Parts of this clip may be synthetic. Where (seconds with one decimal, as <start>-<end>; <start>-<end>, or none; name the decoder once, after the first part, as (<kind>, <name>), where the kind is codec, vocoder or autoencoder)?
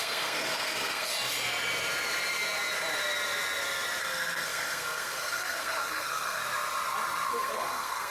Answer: 0.0-1.1 (codec, SNAC); 4.0-6.4; 7.3-8.1